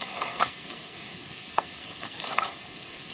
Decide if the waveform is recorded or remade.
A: remade